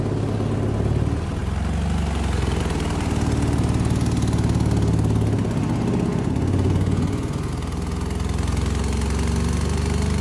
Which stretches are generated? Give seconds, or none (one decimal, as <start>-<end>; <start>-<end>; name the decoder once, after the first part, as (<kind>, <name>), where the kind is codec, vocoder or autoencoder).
6.1-7.5 (vocoder, Vocos)